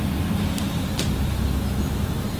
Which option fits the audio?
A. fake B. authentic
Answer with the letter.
B